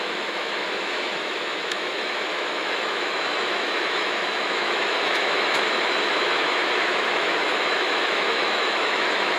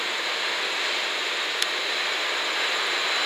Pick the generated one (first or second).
first